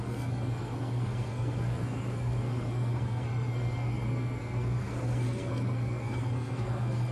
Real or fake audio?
fake